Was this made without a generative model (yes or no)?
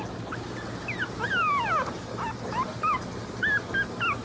yes